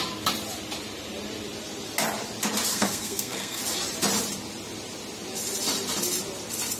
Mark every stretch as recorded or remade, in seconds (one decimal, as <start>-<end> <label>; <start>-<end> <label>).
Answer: 0.0-2.7 recorded; 2.7-3.6 remade; 3.6-6.8 recorded